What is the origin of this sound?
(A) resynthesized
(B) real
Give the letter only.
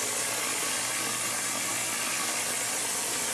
B